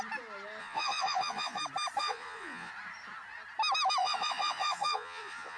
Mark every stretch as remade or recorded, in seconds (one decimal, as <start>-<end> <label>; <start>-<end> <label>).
0.0-0.6 recorded; 0.6-1.6 remade; 1.6-2.0 recorded; 2.0-2.7 remade; 2.7-4.0 recorded; 4.0-5.6 remade